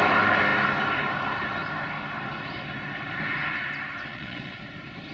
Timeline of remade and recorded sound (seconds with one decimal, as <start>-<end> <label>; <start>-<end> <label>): 0.0-4.1 recorded; 4.1-4.6 remade; 4.6-5.1 recorded